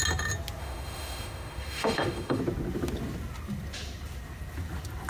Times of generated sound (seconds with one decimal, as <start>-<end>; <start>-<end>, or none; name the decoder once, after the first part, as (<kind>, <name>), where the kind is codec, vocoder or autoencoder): 0.6-2.4 (autoencoder, DAC-VAE)